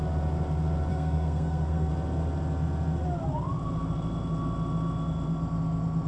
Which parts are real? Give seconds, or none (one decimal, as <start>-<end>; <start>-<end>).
0.0-0.9; 1.9-6.1